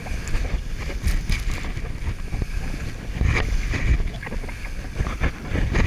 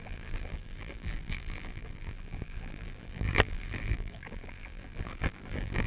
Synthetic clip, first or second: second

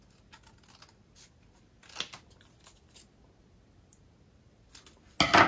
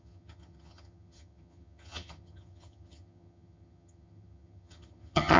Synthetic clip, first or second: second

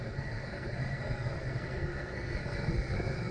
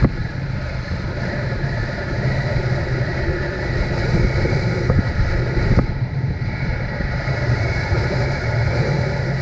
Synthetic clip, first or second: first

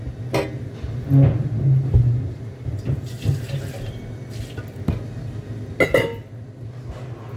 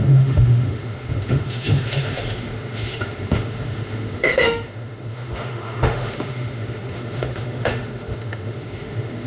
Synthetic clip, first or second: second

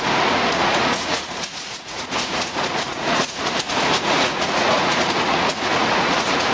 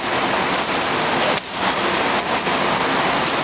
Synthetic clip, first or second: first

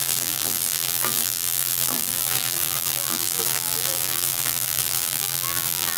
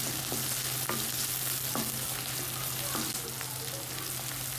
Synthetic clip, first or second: first